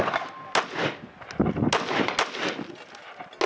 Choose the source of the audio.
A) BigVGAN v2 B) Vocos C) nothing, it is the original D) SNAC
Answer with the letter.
C